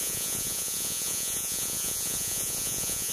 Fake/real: fake